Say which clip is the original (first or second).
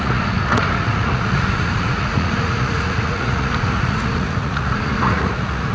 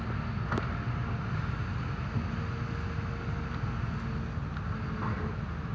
second